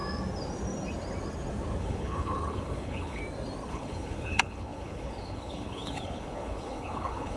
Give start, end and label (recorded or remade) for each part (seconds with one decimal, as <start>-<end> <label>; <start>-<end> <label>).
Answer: 0.0-1.8 recorded; 1.8-3.2 remade; 3.2-3.7 recorded; 3.7-7.4 remade

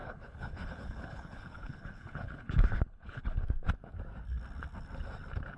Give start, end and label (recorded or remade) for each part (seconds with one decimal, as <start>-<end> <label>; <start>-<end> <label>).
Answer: 0.0-3.4 remade; 3.4-5.6 recorded

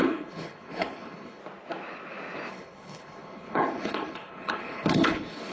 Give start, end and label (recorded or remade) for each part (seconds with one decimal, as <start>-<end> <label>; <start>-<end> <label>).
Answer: 0.0-1.4 remade; 1.4-2.5 recorded; 2.5-5.5 remade

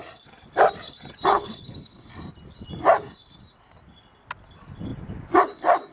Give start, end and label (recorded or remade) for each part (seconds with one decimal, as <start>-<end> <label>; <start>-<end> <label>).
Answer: 0.0-1.3 recorded; 1.3-2.1 remade; 2.1-5.9 recorded